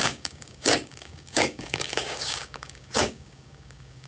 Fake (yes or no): yes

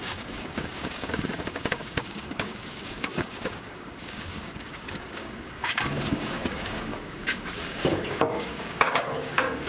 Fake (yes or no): yes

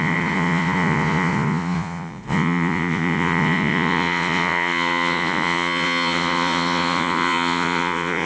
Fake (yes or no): yes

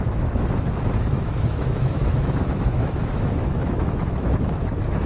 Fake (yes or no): yes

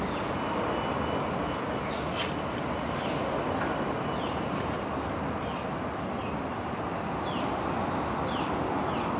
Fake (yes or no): no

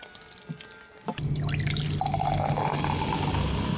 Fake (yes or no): no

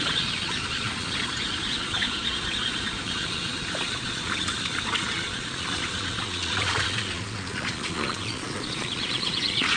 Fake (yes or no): yes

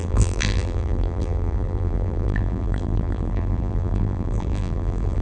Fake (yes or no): yes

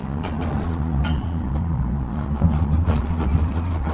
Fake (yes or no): yes